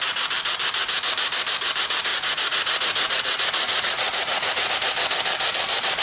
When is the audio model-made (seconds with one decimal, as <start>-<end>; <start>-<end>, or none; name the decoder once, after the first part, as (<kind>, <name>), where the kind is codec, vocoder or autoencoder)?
2.1-4.7 (vocoder, Vocos)